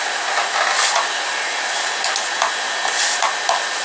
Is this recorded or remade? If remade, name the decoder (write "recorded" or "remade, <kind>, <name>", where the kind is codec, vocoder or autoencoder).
recorded